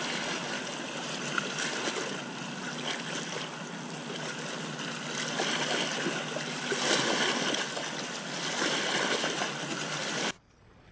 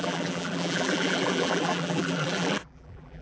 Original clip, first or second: first